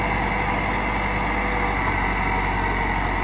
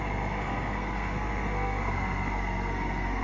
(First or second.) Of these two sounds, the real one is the first